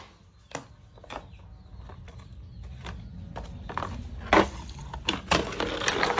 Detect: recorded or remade recorded